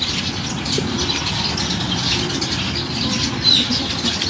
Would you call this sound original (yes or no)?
yes